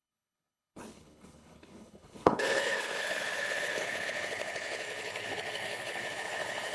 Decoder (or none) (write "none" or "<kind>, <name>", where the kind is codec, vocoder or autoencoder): codec, HILCodec